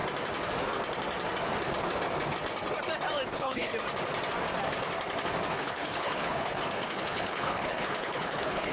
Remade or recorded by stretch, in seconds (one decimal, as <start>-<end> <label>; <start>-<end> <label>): 0.0-3.3 recorded; 3.3-3.7 remade; 3.7-5.5 recorded; 5.5-8.7 remade